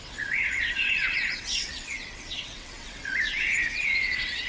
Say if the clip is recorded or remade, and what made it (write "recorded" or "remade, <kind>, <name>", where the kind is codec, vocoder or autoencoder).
remade, vocoder, WaveNeXt